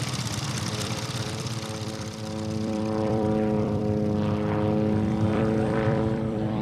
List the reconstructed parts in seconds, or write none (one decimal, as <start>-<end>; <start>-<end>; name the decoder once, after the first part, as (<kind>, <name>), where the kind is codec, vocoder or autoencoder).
0.0-3.8 (vocoder, BigVGAN v2); 5.3-6.6